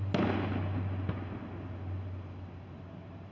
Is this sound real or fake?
real